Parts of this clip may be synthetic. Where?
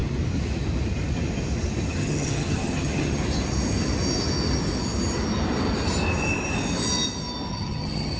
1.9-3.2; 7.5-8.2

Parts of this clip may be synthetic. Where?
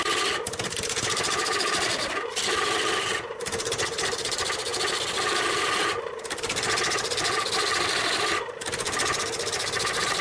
none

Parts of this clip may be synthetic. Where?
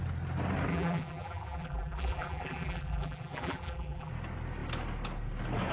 0.7-4.1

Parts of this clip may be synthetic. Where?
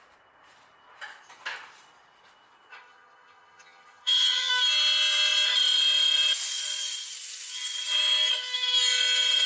2.7-4.5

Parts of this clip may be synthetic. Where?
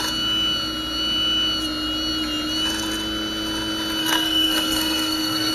4.0-5.5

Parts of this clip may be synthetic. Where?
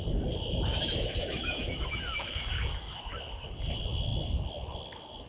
0.7-3.1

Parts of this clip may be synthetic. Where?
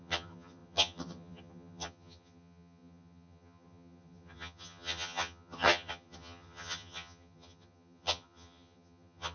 0.0-9.3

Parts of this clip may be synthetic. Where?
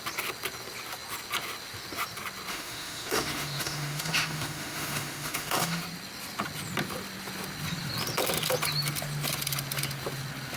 2.5-5.8